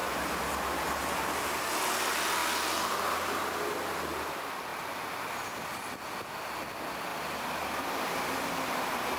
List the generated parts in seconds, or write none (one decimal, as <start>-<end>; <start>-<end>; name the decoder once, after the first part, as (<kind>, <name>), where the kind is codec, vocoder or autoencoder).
0.0-1.3 (vocoder, BigVGAN v2); 7.1-9.2

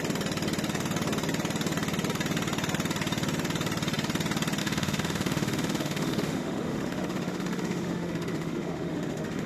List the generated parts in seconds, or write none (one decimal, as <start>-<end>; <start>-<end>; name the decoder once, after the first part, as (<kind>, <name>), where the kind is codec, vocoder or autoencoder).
4.6-9.5 (autoencoder, DAC-VAE)

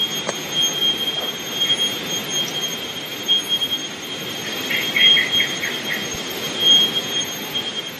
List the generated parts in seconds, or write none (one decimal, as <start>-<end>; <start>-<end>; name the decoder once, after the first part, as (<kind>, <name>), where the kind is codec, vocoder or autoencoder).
3.8-6.9 (vocoder, BigVGAN v2)

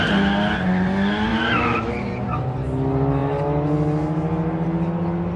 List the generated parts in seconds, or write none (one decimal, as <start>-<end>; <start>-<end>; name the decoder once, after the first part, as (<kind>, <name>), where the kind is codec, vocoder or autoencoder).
1.3-1.9 (autoencoder, DAC-VAE)

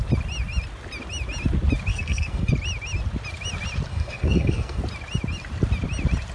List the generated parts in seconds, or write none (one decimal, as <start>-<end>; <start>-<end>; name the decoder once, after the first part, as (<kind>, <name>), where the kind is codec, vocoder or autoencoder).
1.9-2.5 (codec, SNAC); 3.9-4.8

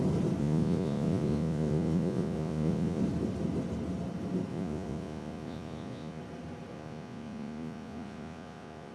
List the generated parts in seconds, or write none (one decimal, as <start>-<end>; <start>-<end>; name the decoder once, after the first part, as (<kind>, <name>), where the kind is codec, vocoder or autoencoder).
0.4-3.0 (vocoder, Vocos); 4.5-6.2; 6.7-8.9

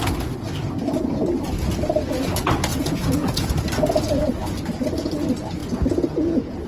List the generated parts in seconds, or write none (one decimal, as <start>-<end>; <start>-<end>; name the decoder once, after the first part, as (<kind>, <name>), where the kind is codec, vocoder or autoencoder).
2.7-3.5 (vocoder, Vocos); 4.4-5.1; 5.6-6.7

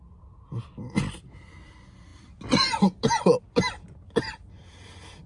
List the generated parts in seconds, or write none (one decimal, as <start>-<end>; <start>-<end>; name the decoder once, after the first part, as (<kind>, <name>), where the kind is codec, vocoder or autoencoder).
none